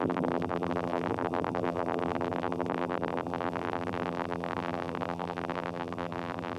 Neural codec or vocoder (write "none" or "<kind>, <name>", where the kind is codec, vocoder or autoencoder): vocoder, BigVGAN v2